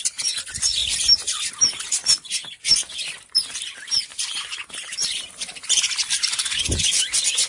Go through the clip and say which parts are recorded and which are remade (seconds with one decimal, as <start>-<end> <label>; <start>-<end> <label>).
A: 0.0-0.8 recorded; 0.8-1.9 remade; 1.9-4.1 recorded; 4.1-6.6 remade; 6.6-7.5 recorded